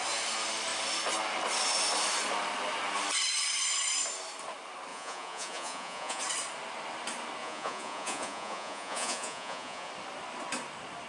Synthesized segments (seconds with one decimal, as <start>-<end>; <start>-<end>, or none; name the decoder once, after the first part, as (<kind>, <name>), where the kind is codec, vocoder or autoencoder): 4.9-6.2 (vocoder, Vocos); 7.4-9.9